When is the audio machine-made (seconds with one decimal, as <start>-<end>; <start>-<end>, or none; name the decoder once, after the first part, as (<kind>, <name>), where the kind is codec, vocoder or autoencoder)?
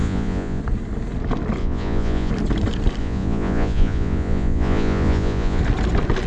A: 0.0-0.6 (vocoder, Vocos); 1.6-2.3; 3.0-5.6